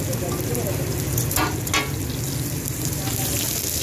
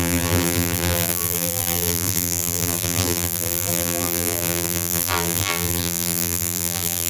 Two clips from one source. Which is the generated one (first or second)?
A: second